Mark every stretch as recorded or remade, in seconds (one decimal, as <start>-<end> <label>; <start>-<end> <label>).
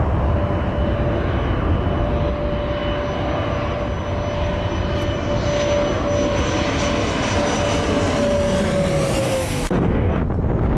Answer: 0.0-9.2 recorded; 9.2-10.2 remade; 10.2-10.8 recorded